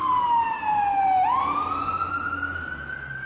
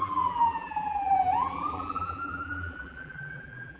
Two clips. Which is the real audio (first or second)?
first